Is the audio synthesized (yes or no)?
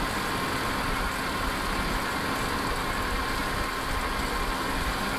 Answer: no